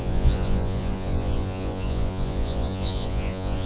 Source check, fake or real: fake